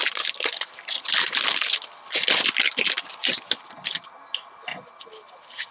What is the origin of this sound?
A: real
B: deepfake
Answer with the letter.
A